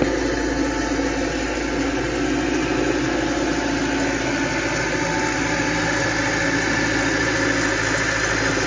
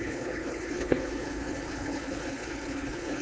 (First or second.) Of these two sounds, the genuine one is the first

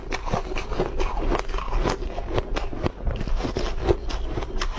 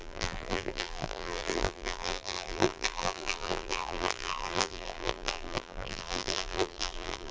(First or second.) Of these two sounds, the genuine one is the first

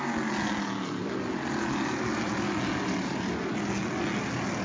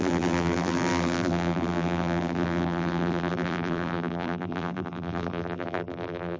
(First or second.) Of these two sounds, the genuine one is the first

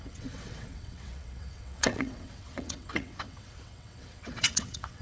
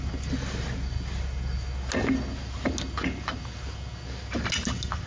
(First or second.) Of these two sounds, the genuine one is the second